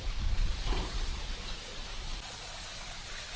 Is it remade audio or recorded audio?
recorded